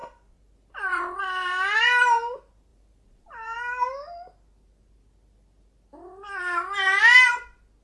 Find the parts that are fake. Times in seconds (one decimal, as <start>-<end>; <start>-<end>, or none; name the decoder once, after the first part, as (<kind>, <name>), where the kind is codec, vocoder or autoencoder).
0.0-1.2 (vocoder, BigVGAN v2); 2.7-3.6